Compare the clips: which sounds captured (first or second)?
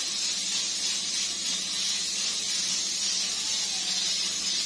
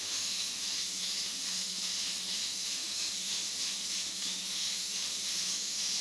first